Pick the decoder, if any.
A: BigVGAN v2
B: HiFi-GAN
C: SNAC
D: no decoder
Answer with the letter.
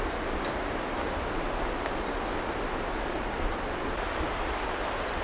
D